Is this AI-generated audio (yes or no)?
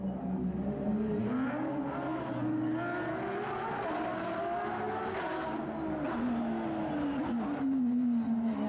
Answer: no